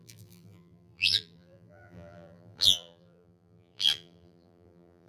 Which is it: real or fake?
fake